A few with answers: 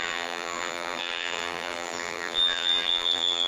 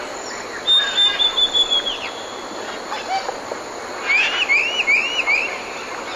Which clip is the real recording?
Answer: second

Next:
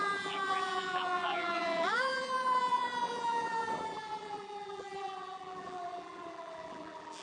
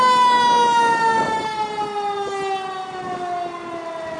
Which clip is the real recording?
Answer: second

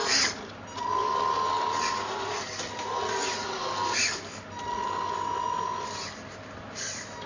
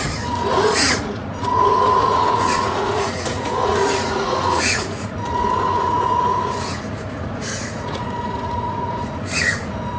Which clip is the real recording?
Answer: first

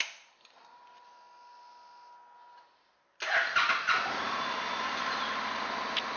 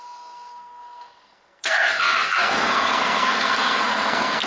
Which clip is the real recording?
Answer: first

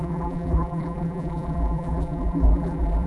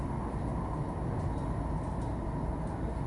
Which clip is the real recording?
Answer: second